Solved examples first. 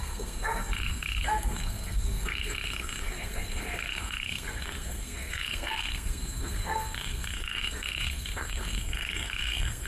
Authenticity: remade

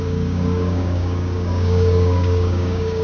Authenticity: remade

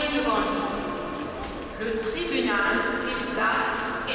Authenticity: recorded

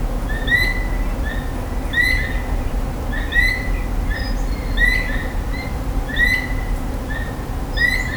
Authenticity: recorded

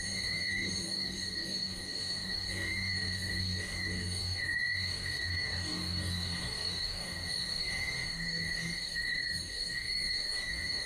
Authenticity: remade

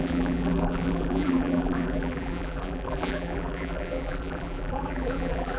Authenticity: remade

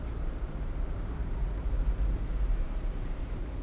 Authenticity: remade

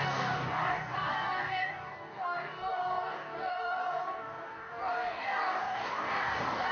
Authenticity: remade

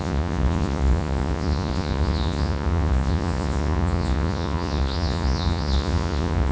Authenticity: remade